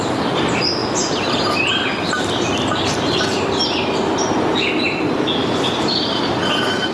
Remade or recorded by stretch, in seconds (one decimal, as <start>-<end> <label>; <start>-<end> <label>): 0.0-0.8 recorded; 0.8-4.7 remade; 4.7-5.4 recorded; 5.4-6.2 remade; 6.2-6.9 recorded